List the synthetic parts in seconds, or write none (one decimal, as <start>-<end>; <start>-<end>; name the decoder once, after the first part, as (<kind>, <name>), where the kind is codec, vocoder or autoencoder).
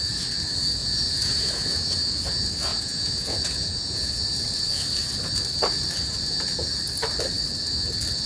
0.8-2.0 (vocoder, Vocos); 2.7-4.2